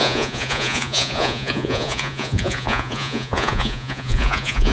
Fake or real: fake